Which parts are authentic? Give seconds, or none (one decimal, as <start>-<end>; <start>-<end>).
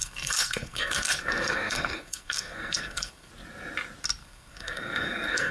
3.3-4.2